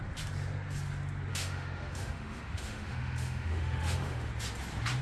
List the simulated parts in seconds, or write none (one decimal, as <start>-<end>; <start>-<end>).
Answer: 1.3-4.3